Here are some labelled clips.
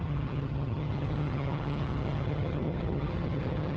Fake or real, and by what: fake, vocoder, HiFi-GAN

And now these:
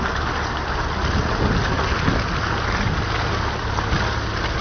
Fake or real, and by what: real